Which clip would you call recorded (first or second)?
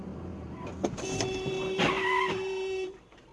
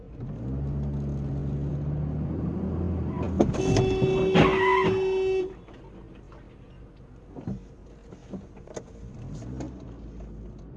second